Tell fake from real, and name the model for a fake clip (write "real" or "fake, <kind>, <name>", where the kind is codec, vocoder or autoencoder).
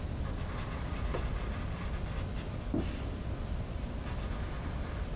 real